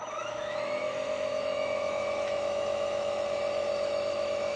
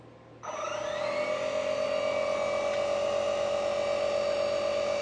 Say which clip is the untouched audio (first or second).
second